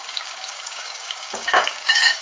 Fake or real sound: fake